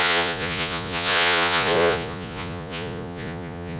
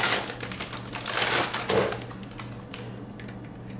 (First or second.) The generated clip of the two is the first